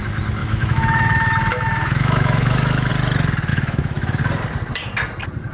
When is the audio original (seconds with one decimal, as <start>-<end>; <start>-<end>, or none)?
0.0-0.4; 2.9-3.5; 4.2-5.5